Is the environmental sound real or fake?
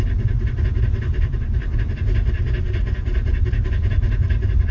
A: real